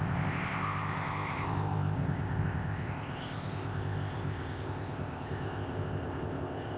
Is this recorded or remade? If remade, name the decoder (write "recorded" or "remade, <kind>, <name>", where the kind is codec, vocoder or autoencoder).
remade, codec, ZipCodec